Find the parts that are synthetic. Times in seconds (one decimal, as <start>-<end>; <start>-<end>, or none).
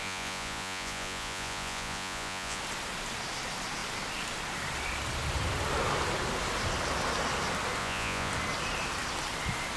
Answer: 0.0-2.6; 7.8-8.3